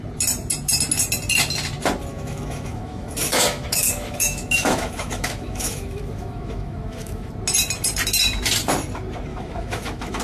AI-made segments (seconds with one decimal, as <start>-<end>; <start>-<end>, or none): 2.1-7.3; 9.3-10.2